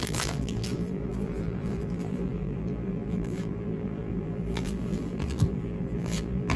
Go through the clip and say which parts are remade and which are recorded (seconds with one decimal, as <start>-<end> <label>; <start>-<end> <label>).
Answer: 0.0-6.6 remade